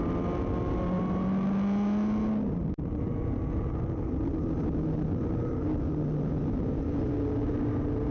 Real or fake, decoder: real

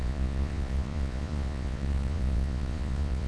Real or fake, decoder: fake, vocoder, Vocos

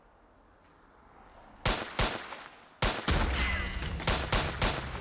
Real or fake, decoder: real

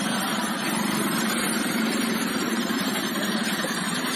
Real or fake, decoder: fake, vocoder, BigVGAN v2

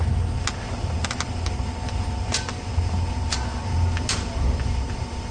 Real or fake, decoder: real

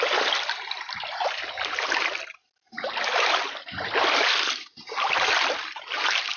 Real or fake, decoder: real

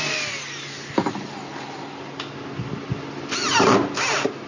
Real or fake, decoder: real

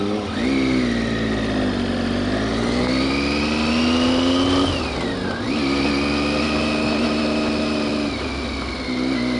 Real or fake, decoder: real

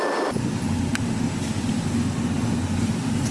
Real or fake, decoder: real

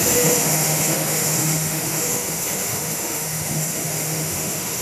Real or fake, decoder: fake, autoencoder, DAC-VAE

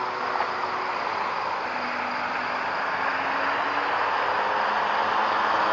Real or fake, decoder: real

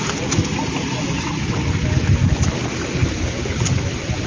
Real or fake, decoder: real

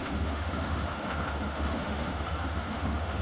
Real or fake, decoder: fake, autoencoder, DAC-VAE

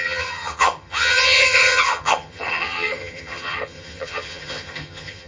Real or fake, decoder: fake, vocoder, HiFi-GAN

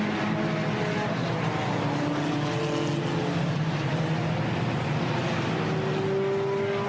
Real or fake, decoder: real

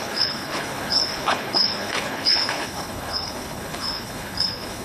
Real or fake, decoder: fake, codec, HILCodec